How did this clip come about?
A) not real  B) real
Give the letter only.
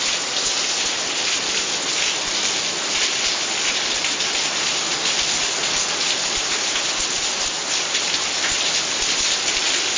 B